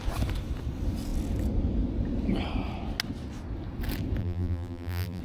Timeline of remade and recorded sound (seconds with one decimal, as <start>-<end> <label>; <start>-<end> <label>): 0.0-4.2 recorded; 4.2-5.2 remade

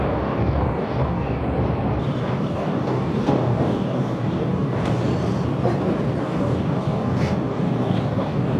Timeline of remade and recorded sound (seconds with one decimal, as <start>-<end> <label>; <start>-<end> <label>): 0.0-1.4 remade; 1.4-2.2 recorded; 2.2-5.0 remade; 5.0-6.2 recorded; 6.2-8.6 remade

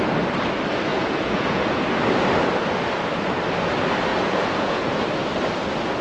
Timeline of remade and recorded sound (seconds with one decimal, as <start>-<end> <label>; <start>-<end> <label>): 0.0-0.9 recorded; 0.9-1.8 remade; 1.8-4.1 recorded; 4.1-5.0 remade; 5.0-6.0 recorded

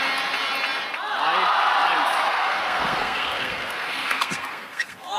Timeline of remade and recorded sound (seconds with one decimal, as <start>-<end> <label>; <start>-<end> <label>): 0.0-2.3 recorded; 2.3-5.2 remade

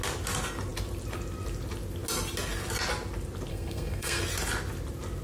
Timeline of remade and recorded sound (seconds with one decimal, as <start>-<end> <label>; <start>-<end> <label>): 0.0-3.5 recorded; 3.5-4.2 remade; 4.2-5.2 recorded